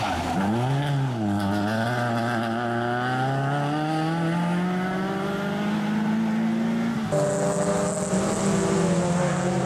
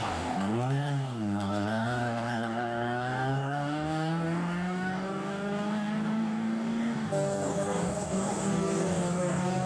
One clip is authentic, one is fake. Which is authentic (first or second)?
first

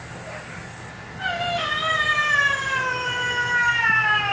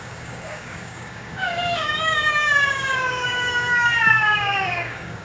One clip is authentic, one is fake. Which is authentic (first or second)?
first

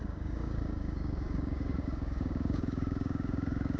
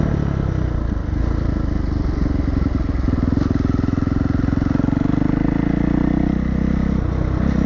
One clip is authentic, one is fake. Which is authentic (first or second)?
second